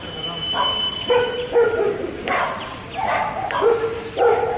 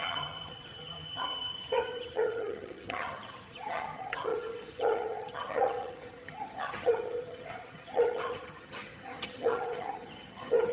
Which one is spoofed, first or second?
second